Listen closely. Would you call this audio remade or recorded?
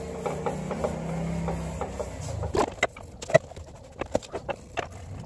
recorded